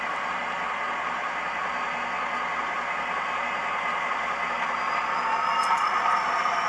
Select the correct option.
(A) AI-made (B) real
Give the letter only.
B